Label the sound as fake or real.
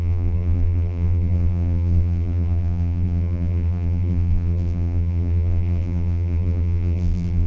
fake